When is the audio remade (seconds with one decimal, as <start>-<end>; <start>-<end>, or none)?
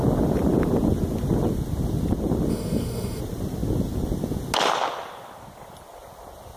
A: 2.5-3.2